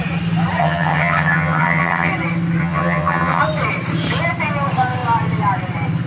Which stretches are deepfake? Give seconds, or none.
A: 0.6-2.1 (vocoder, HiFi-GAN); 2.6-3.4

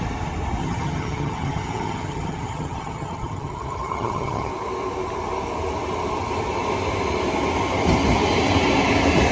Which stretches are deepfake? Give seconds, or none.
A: 0.6-4.5 (vocoder, HiFi-GAN)

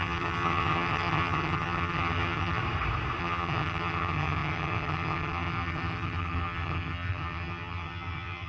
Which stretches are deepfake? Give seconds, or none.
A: 0.0-2.6 (vocoder, HiFi-GAN); 3.2-8.5

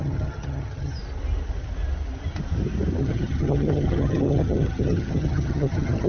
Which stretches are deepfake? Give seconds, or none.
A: 0.0-1.0 (vocoder, HiFi-GAN); 3.0-6.1

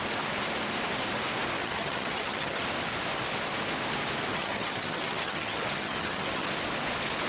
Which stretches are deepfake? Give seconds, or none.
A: 1.6-2.6 (vocoder, HiFi-GAN); 4.3-6.5

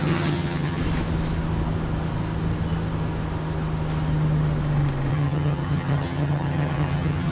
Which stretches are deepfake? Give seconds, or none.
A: 0.0-0.8 (vocoder, HiFi-GAN); 5.1-7.3

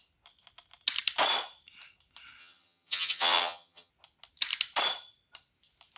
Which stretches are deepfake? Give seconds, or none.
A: 2.4-3.9 (vocoder, HiFi-GAN)